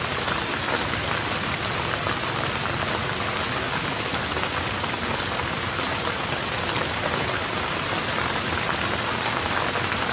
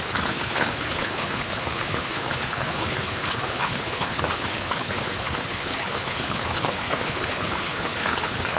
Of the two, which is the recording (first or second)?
first